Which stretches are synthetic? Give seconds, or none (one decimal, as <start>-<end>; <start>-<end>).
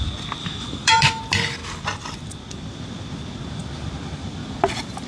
0.4-1.2